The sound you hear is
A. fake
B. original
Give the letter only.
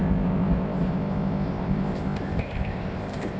A